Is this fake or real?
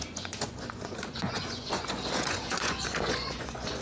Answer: fake